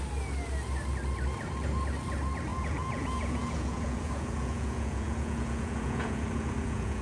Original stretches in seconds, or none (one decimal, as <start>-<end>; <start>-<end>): 0.0-2.5